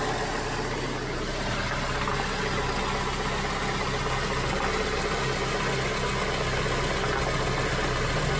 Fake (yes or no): no